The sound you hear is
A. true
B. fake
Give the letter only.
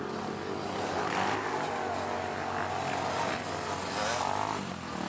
A